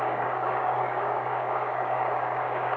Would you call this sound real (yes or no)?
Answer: no